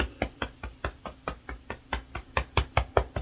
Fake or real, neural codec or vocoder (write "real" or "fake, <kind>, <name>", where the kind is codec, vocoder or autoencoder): real